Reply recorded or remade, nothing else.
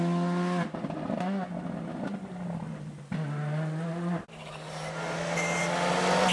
recorded